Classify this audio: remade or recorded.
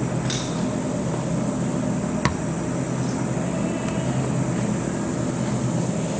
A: recorded